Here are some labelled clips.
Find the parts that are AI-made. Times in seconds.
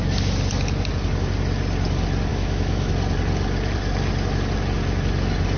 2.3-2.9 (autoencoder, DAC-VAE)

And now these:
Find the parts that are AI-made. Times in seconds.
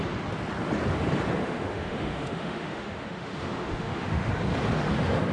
1.4-4.3 (autoencoder, DAC-VAE)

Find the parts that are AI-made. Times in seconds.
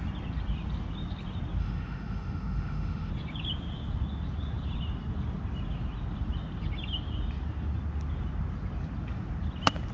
1.6-3.1 (autoencoder, DAC-VAE)